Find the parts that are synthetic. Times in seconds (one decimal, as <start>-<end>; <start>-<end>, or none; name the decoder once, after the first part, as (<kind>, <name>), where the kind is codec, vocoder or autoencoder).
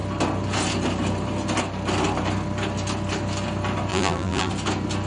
3.9-4.5 (vocoder, BigVGAN v2)